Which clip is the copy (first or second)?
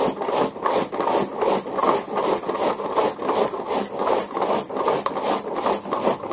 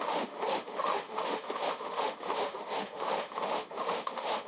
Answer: second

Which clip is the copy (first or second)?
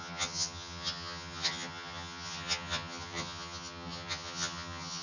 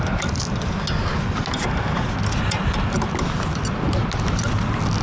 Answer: first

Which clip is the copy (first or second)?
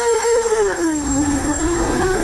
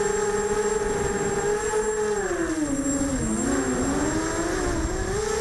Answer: first